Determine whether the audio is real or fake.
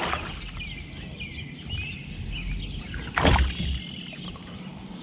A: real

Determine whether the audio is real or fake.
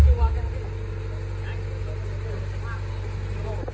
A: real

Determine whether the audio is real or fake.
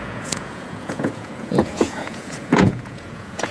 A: fake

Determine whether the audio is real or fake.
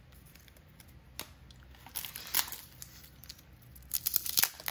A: real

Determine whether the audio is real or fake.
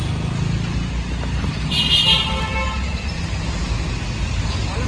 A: real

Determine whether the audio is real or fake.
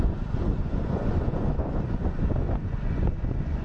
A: fake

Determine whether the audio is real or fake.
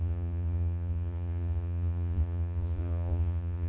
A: fake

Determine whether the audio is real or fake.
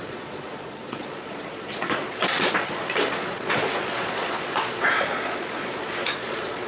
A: fake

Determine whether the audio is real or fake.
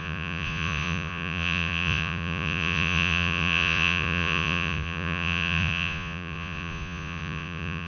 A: fake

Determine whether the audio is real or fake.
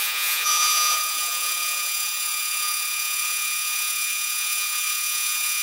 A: fake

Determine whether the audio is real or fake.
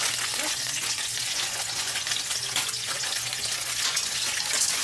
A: fake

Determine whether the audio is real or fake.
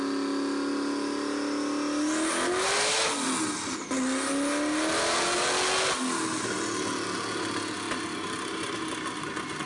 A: real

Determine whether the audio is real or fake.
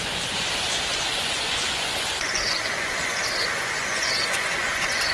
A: fake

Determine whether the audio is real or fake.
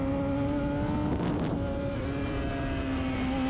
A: real